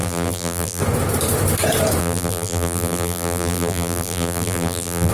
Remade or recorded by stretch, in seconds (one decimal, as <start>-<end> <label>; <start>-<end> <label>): 0.0-0.8 remade; 0.8-2.0 recorded; 2.0-5.1 remade